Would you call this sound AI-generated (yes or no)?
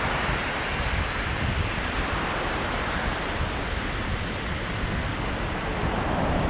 no